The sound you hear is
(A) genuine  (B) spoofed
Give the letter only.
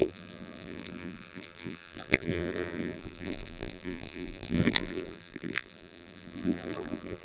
B